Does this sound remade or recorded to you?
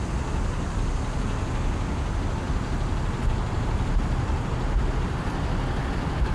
recorded